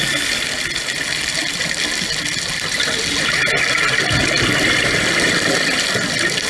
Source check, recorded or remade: recorded